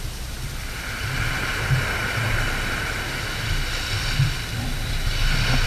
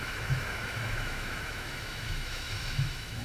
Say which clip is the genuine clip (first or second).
first